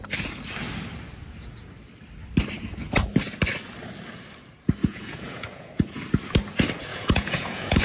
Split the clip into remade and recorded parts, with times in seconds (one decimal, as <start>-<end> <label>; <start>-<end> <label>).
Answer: 0.0-4.8 recorded; 4.8-6.0 remade; 6.0-6.9 recorded; 6.9-7.8 remade